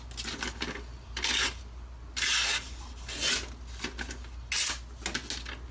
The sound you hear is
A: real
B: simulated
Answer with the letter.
A